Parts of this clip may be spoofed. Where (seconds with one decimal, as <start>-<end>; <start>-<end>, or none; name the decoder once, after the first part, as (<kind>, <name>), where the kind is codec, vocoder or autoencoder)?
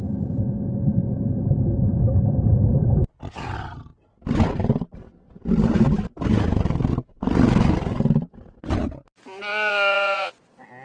9.5-10.3 (vocoder, Vocos)